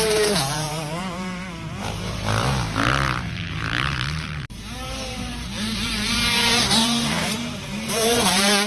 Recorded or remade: remade